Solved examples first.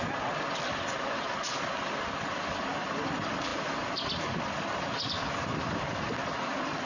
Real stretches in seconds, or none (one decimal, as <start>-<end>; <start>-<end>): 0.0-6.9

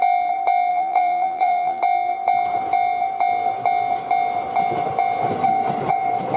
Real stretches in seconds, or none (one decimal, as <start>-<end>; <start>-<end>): 0.0-0.7; 1.8-6.4

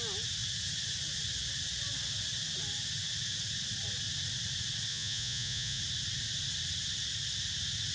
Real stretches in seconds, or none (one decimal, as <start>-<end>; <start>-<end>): 0.0-4.9; 5.8-7.9

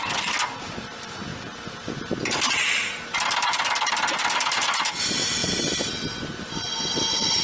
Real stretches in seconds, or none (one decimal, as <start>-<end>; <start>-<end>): 0.0-7.4